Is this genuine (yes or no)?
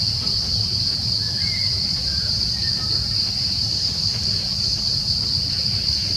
yes